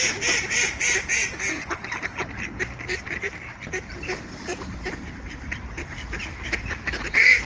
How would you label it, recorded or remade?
remade